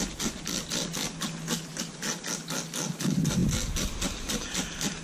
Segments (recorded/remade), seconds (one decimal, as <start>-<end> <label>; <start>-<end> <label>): 0.0-5.0 recorded